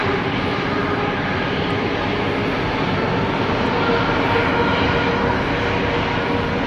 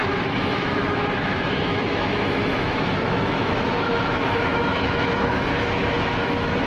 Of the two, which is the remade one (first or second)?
second